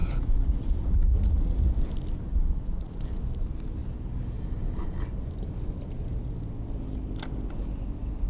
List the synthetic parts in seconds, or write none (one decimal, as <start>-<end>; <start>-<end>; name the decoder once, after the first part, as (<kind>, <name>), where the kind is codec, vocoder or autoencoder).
0.0-1.7 (vocoder, Vocos); 2.3-3.0